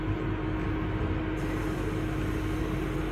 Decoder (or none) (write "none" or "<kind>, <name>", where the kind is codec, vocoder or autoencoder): none